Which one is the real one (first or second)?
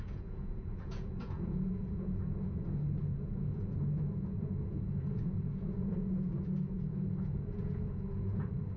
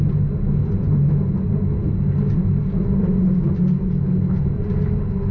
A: second